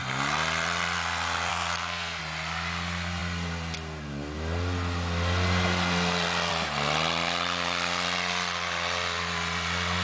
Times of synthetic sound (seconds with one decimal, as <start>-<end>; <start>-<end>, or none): 1.5-2.2